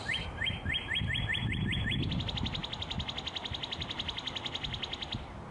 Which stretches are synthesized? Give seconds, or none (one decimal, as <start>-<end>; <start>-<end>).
none